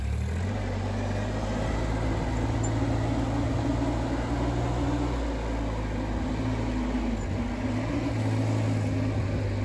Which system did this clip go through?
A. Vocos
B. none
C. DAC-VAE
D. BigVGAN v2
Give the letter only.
B